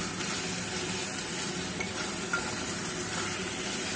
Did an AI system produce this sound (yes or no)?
no